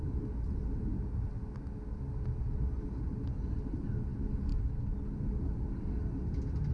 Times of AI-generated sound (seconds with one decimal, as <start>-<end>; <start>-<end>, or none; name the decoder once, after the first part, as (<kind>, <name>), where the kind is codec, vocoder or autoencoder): none